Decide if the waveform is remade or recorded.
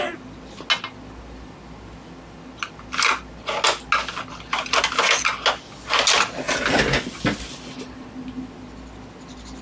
recorded